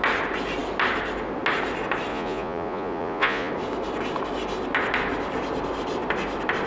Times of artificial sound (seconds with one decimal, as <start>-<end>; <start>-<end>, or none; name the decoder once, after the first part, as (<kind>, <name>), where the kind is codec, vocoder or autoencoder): 2.1-3.5 (vocoder, Vocos)

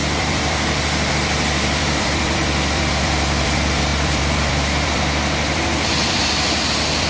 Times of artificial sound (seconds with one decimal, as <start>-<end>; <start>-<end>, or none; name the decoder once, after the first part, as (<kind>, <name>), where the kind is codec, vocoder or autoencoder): 0.0-7.1 (vocoder, BigVGAN v2)

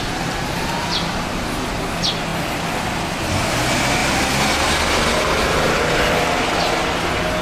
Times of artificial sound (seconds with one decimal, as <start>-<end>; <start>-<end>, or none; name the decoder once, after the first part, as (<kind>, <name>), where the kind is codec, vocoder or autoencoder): none

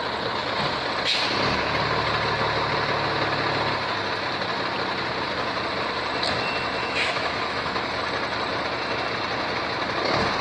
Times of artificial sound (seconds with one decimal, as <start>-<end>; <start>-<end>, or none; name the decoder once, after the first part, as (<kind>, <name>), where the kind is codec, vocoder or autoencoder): 6.8-7.9 (autoencoder, DAC-VAE)

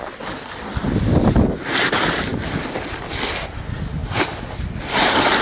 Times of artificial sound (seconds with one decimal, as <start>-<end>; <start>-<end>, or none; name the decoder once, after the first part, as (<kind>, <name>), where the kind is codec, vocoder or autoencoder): none

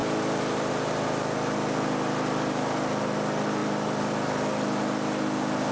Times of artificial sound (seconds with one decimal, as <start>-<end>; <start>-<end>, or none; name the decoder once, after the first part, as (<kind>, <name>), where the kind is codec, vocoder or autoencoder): 0.0-0.7 (vocoder, BigVGAN v2)

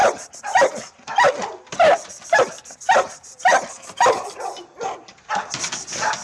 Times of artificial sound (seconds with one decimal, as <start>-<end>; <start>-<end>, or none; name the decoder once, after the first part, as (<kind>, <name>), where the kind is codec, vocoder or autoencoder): none